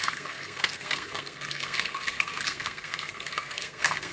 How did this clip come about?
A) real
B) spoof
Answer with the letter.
B